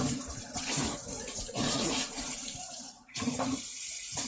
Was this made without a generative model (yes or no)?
no